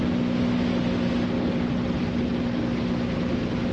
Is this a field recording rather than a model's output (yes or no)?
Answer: yes